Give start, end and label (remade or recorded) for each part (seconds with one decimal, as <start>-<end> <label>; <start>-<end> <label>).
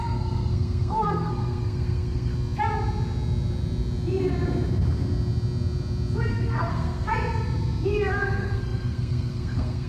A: 0.0-2.3 remade; 2.3-6.3 recorded; 6.3-7.1 remade; 7.1-8.1 recorded; 8.1-9.9 remade